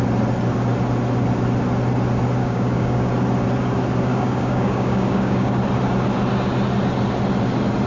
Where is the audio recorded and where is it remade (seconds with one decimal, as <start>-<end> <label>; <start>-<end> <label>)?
0.0-2.4 recorded; 2.4-3.1 remade; 3.1-4.1 recorded; 4.1-5.6 remade; 5.6-7.9 recorded